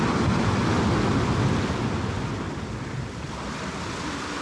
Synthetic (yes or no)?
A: no